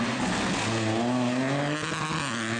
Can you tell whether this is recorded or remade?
recorded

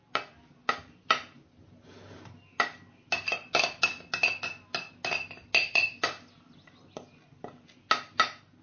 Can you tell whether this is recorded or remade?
recorded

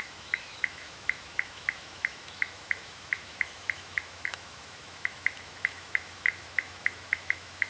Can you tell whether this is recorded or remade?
remade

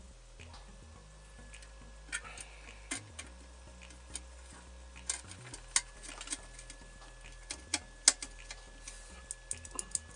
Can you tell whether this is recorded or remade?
recorded